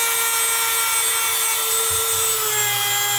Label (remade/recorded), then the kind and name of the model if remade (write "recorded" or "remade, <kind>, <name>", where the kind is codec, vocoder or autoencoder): recorded